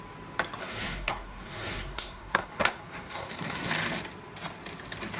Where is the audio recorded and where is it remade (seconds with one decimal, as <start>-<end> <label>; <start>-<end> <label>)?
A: 0.0-0.6 recorded; 0.6-3.7 remade; 3.7-5.2 recorded